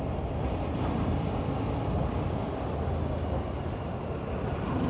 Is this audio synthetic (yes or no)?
no